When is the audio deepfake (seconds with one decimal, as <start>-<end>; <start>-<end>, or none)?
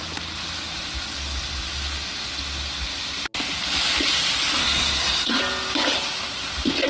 4.6-5.4